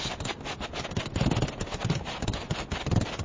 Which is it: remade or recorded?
recorded